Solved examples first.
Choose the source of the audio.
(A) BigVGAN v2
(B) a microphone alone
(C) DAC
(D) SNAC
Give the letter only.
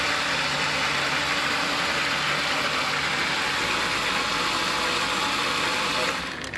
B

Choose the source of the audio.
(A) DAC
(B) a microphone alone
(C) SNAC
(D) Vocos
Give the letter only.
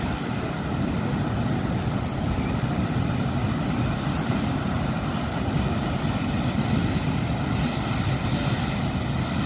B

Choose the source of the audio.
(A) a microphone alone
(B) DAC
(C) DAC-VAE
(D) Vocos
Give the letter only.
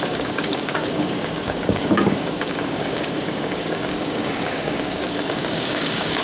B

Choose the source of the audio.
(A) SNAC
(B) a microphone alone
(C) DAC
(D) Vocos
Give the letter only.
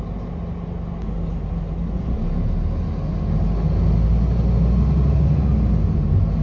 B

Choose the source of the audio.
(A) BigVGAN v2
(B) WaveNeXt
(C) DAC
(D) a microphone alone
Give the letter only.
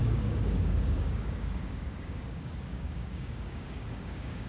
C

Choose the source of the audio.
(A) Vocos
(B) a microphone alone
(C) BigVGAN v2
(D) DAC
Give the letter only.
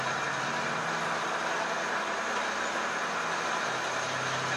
B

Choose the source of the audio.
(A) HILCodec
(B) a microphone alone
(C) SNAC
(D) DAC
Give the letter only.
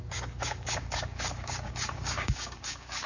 D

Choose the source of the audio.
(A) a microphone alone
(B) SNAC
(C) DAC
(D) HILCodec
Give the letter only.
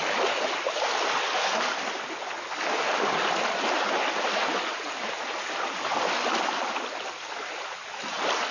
A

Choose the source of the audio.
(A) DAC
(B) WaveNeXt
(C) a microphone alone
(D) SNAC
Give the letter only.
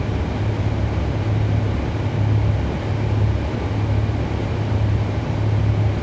C